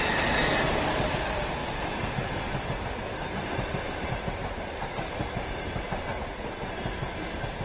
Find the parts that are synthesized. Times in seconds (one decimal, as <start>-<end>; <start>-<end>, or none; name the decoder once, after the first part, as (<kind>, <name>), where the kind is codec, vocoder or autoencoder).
1.6-6.2 (vocoder, BigVGAN v2)